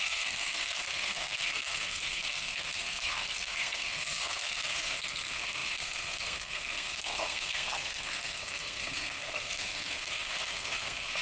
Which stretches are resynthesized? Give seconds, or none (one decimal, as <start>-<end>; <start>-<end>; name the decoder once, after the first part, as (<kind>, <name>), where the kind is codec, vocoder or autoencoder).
0.0-11.2 (codec, SNAC)